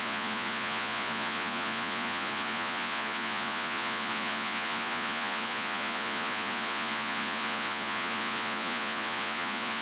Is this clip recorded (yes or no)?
no